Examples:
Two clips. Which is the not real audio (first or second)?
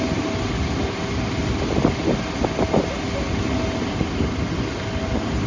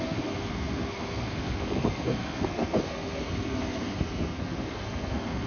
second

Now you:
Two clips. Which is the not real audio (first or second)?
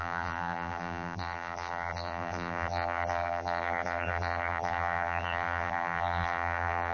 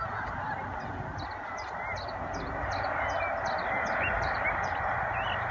first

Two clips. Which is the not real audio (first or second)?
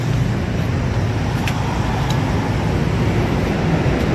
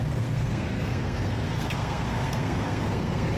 second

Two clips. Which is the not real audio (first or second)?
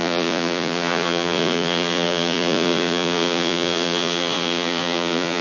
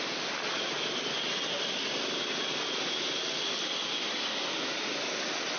first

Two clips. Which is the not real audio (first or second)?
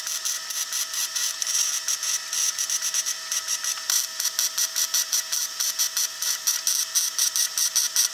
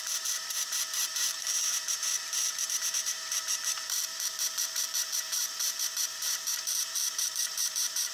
second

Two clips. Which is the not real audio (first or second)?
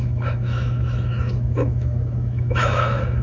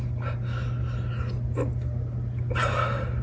first